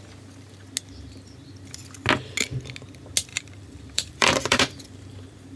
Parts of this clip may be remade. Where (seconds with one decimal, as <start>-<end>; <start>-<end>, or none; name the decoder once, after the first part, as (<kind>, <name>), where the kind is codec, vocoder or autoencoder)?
3.3-4.9 (vocoder, BigVGAN v2)